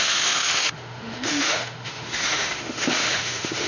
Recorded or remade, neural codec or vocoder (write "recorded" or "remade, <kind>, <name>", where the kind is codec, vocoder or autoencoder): remade, autoencoder, DAC-VAE